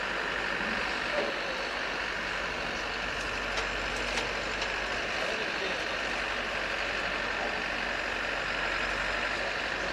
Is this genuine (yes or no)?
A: yes